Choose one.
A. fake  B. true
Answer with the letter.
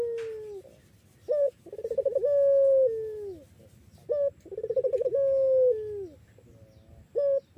B